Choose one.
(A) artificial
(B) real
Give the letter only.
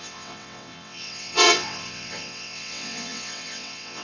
A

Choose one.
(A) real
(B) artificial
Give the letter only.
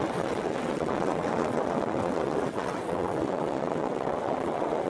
B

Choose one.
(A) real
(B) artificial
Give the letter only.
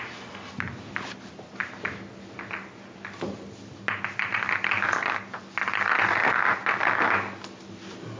A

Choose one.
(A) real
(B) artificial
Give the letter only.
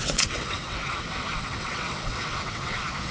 B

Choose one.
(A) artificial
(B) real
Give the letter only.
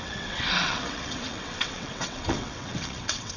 A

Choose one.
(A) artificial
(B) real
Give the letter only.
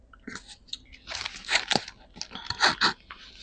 B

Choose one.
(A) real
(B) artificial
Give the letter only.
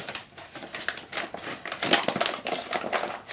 A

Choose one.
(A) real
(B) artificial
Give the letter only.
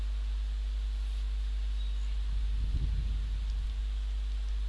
A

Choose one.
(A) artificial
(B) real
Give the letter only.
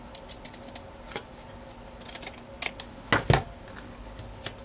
B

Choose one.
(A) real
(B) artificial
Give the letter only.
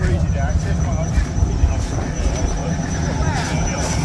A